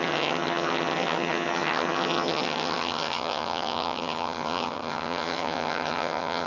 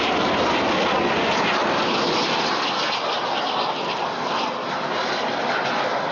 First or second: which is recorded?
second